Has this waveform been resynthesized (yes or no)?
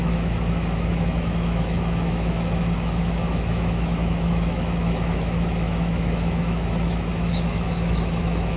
yes